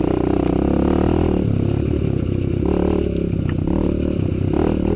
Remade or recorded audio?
recorded